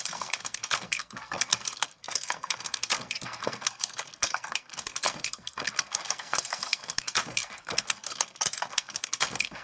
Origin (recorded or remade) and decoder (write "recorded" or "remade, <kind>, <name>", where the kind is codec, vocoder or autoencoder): remade, codec, SNAC